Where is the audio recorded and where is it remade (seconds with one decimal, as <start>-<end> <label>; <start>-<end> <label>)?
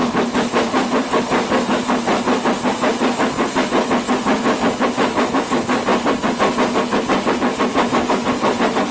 0.0-8.9 recorded